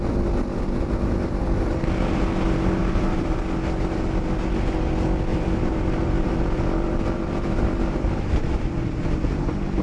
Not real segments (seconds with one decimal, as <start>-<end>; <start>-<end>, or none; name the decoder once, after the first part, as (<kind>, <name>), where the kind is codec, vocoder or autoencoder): 2.8-3.4 (vocoder, BigVGAN v2); 5.3-9.1

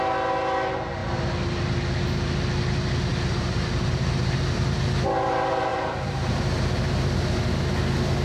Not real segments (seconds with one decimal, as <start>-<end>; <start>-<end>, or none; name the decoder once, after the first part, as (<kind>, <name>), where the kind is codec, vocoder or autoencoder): 3.1-4.4 (vocoder, BigVGAN v2); 5.7-6.4

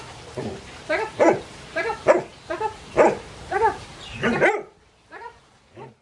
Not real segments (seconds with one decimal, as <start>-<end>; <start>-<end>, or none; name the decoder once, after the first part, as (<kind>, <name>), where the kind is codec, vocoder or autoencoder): 0.0-6.0 (vocoder, BigVGAN v2)

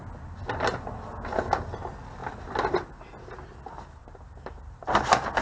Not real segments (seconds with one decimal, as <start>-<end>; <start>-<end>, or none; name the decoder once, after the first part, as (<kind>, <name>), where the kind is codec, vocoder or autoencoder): 4.0-4.6 (vocoder, BigVGAN v2)

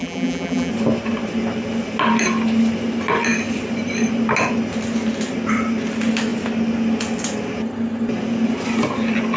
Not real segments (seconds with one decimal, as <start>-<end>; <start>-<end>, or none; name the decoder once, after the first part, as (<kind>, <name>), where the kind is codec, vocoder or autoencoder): 0.0-0.7 (vocoder, BigVGAN v2)

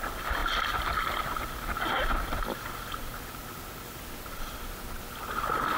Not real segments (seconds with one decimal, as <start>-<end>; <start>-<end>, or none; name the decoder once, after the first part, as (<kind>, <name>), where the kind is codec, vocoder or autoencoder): none

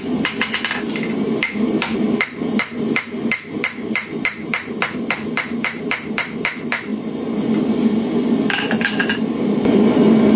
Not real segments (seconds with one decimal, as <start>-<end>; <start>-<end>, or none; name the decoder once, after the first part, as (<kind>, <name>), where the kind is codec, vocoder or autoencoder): 0.0-10.4 (vocoder, BigVGAN v2)

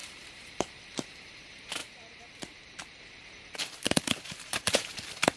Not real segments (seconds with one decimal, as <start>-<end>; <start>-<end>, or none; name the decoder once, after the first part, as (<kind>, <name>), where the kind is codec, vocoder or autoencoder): 0.0-1.8 (vocoder, BigVGAN v2); 3.0-5.4